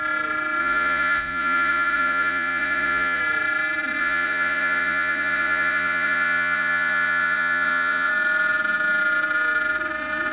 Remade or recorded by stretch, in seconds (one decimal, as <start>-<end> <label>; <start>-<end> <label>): 0.0-0.6 recorded; 0.6-3.2 remade; 3.2-4.0 recorded; 4.0-8.1 remade; 8.1-10.3 recorded